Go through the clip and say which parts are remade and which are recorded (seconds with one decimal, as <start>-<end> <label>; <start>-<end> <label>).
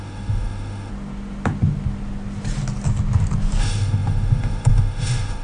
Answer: 0.0-0.9 remade; 0.9-3.6 recorded; 3.6-5.4 remade